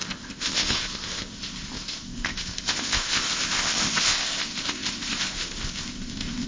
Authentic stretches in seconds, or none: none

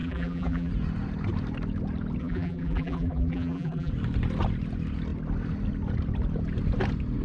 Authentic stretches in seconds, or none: 0.7-2.2; 3.9-7.2

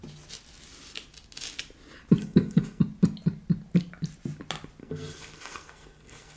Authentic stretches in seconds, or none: 0.0-2.2; 2.8-4.8

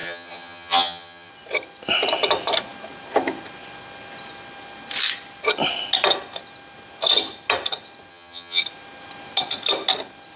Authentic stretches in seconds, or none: 1.3-8.1; 8.6-10.4

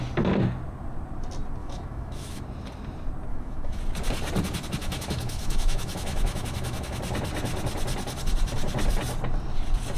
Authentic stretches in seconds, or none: 0.0-1.6; 2.4-3.3; 3.8-4.8; 7.0-10.0

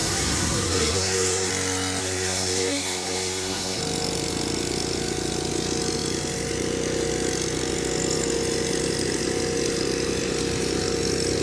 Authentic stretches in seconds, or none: 1.5-2.0; 3.8-11.4

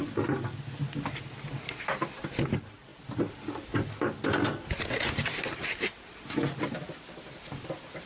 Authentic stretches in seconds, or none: 0.0-8.1

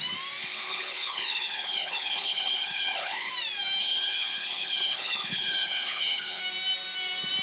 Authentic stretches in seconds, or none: 0.0-0.4; 3.3-3.8; 6.4-7.4